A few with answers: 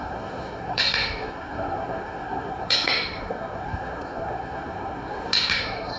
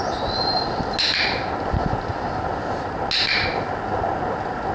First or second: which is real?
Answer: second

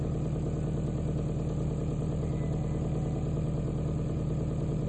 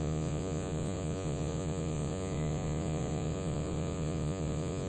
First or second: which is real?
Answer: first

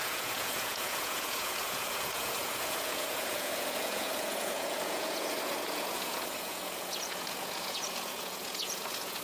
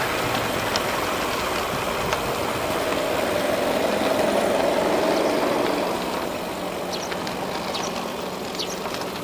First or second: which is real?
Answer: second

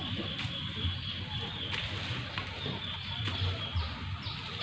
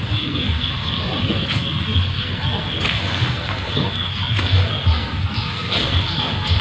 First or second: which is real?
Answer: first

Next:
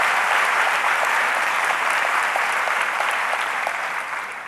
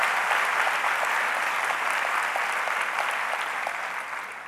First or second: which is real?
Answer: second